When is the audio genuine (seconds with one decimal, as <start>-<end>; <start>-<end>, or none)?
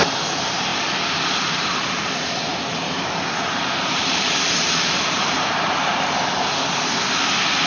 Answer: 0.0-2.5; 6.4-7.7